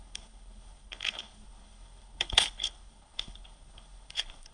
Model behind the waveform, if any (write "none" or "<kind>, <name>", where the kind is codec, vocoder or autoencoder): codec, HILCodec